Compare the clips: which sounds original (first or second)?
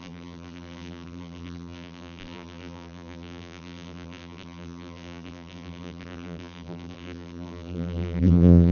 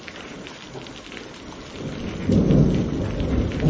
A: second